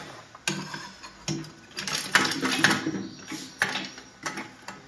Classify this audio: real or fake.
real